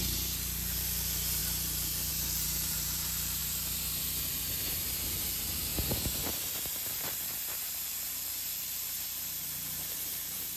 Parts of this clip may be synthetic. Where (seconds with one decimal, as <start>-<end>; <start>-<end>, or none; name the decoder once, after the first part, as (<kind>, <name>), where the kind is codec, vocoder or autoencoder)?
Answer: 0.0-3.4 (vocoder, BigVGAN v2); 4.6-5.7; 7.6-10.6